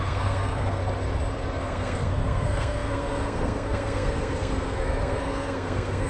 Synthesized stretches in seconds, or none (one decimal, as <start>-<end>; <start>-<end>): 0.0-0.8; 1.6-6.1